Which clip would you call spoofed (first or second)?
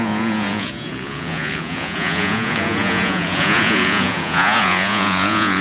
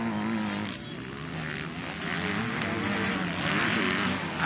first